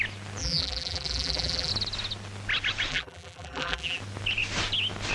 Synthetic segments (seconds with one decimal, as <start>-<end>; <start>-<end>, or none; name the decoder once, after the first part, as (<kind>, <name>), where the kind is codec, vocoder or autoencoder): 0.4-1.7 (vocoder, BigVGAN v2); 2.9-4.0